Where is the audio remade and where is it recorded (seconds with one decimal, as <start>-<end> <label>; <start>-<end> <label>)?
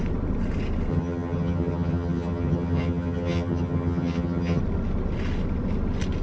0.0-0.9 recorded; 0.9-4.6 remade; 4.6-6.2 recorded